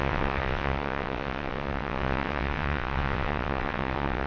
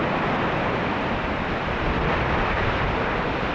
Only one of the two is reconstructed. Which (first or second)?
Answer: first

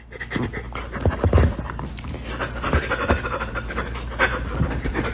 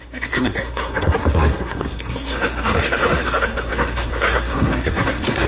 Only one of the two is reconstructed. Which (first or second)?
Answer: second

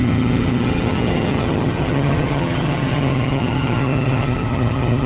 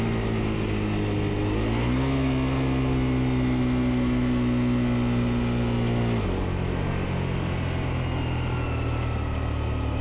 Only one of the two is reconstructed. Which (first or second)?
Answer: first